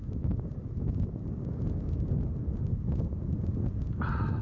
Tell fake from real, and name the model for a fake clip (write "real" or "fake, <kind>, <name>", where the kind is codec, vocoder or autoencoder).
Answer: real